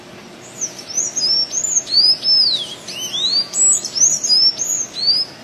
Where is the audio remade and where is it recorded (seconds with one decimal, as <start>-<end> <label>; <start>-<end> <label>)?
0.0-5.4 recorded